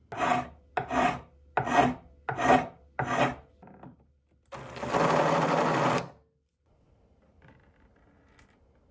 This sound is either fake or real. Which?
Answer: real